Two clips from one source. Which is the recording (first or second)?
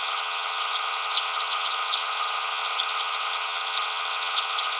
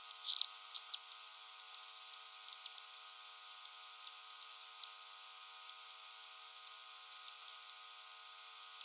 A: second